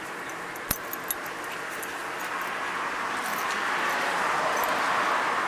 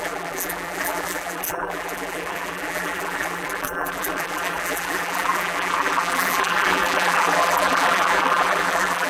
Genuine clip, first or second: first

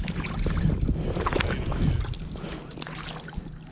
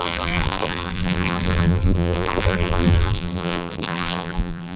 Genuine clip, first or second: first